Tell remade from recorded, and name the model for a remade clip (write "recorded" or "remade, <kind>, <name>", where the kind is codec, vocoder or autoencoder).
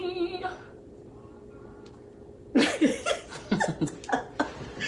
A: remade, vocoder, BigVGAN v2